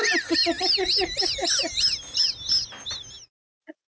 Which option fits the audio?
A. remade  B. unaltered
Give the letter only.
B